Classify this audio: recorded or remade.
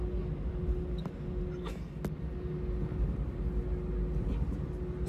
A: recorded